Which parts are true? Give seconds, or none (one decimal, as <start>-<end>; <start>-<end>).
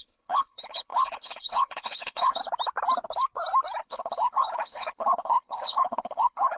2.4-3.8